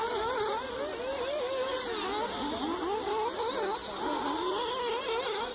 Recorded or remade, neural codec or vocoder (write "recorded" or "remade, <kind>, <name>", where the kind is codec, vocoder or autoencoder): recorded